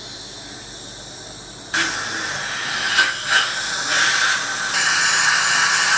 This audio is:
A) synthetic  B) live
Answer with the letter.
B